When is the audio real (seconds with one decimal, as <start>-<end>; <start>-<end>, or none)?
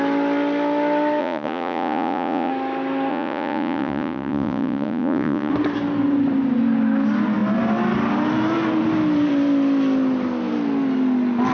0.0-1.2; 2.5-3.1; 5.5-11.5